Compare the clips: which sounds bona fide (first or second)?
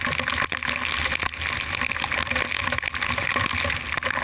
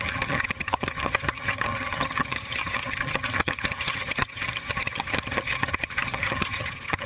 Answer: first